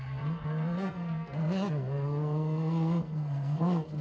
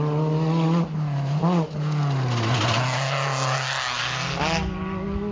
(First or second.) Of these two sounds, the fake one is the first